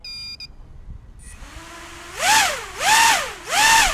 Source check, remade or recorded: recorded